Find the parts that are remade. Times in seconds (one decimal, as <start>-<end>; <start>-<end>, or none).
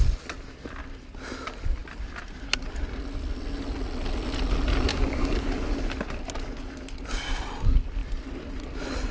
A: 4.9-5.7